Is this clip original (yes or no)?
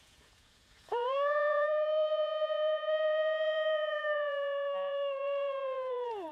no